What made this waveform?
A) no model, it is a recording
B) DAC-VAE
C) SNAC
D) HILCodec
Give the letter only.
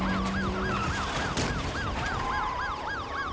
A